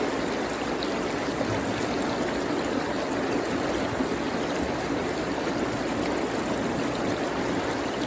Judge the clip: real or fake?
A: real